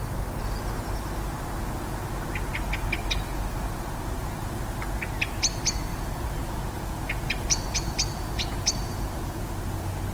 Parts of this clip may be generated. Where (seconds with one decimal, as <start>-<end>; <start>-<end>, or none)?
5.9-9.4